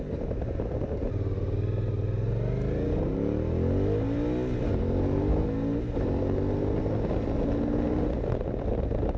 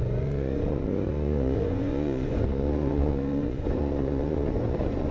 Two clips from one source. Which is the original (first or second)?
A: first